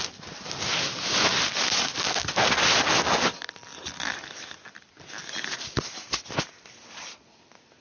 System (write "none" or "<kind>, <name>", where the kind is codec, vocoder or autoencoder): none